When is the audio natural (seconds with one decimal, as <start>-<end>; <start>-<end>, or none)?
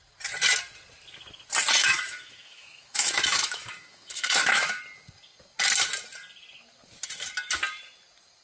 0.0-1.8; 4.8-8.4